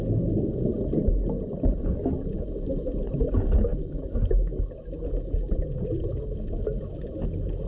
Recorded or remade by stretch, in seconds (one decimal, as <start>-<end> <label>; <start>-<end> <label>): 0.0-7.7 recorded